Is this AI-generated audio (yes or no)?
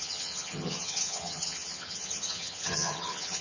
yes